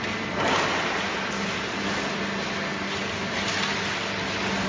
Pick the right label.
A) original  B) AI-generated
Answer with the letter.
A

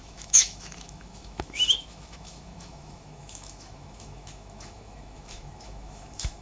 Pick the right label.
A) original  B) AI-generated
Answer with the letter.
B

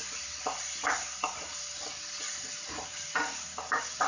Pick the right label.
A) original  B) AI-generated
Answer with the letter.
A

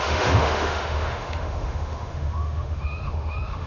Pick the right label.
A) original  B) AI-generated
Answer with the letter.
B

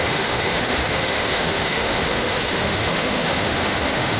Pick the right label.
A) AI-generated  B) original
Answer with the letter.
A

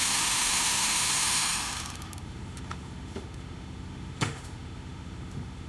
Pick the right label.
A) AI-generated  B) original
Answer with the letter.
A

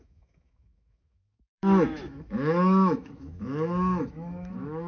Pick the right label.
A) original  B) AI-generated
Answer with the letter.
B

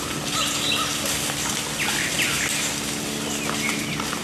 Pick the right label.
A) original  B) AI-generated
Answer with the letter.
A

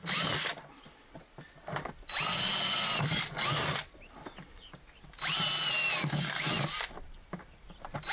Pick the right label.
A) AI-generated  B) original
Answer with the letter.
B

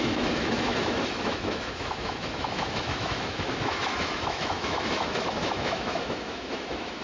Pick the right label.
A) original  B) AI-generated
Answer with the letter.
B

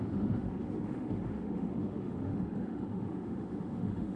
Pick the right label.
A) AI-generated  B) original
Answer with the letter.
A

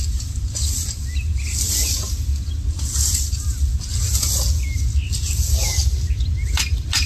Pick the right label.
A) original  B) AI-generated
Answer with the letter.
A